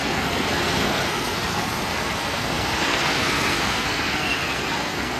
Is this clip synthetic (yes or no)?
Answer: yes